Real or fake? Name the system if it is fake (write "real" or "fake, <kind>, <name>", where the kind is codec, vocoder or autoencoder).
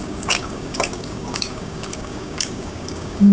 fake, codec, DAC